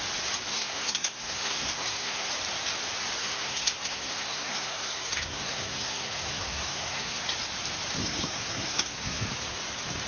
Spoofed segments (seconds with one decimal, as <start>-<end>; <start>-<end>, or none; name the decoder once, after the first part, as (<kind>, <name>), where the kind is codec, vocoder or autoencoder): 0.5-2.3 (codec, SNAC); 3.2-7.2; 8.0-9.3